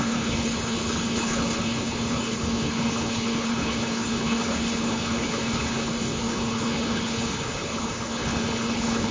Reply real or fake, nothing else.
fake